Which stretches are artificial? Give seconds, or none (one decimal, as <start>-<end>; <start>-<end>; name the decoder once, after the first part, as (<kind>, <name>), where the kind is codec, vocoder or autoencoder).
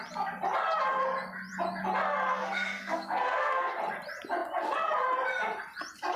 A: 2.3-3.7 (codec, SNAC)